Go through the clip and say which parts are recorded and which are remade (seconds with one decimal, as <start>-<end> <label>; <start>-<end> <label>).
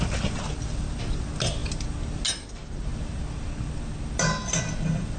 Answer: 0.0-5.2 recorded